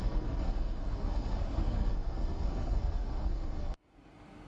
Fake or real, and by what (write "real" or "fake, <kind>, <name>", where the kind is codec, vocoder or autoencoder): fake, codec, SNAC